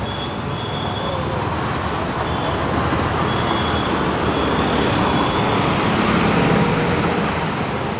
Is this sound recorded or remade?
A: recorded